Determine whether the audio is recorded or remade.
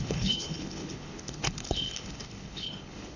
remade